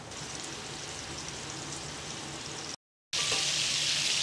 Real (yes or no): yes